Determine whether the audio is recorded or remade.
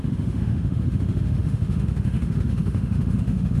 remade